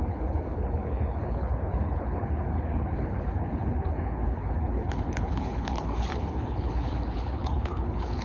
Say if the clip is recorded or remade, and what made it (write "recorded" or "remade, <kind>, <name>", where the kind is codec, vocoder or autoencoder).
remade, codec, HILCodec